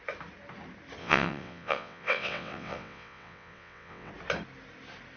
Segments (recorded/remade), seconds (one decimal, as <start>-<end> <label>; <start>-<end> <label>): 0.0-1.0 recorded; 1.0-4.1 remade; 4.1-5.2 recorded